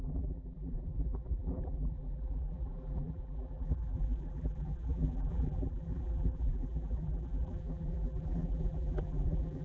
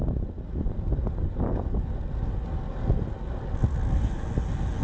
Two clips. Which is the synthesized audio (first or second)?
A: first